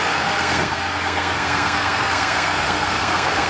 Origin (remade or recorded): remade